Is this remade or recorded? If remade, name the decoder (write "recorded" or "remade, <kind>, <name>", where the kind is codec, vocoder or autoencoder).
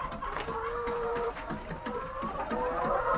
recorded